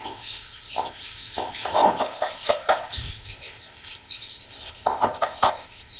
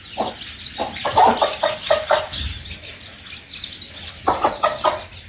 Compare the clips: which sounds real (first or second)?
second